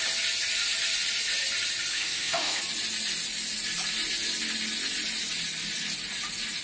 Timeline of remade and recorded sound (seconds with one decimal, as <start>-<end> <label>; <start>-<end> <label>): 0.0-1.9 recorded; 1.9-2.6 remade; 2.6-6.6 recorded